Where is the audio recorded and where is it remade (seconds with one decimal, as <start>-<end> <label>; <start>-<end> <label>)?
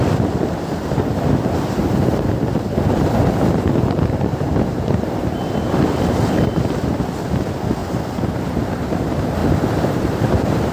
0.0-1.8 recorded; 1.8-4.5 remade; 4.5-9.4 recorded; 9.4-10.7 remade